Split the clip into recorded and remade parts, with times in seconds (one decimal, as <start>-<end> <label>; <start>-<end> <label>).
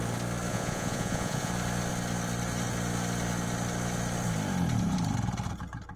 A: 0.0-0.5 recorded; 0.5-1.5 remade; 1.5-6.0 recorded